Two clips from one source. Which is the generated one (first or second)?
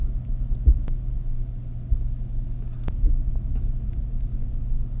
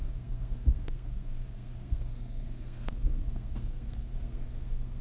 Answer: second